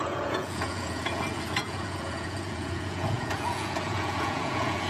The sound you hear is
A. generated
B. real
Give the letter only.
A